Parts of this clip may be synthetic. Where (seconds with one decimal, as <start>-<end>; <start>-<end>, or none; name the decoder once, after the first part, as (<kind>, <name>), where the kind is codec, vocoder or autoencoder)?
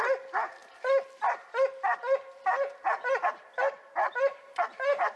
none